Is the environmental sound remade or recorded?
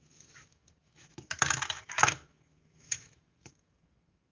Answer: remade